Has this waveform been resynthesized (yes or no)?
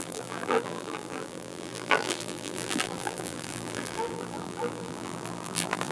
yes